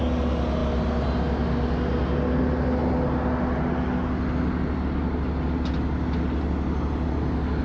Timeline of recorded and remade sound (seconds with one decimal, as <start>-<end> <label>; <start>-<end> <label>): 0.0-7.6 recorded